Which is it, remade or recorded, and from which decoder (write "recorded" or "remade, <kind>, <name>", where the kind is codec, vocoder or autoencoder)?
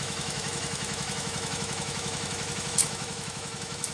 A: remade, autoencoder, DAC-VAE